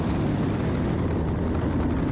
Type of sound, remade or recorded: recorded